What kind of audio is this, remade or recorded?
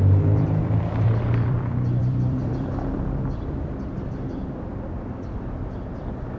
remade